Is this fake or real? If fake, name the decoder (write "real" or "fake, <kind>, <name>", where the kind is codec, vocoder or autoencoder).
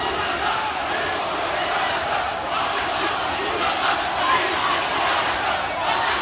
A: real